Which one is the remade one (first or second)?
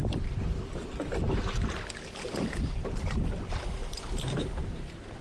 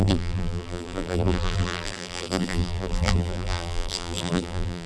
second